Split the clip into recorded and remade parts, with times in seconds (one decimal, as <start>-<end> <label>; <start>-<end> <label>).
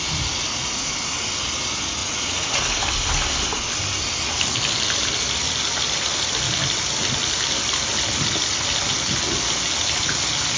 0.0-2.0 recorded; 2.0-2.6 remade; 2.6-10.6 recorded